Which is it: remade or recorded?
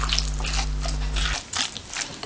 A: recorded